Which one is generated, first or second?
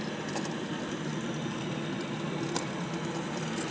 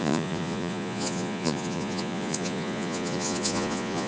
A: second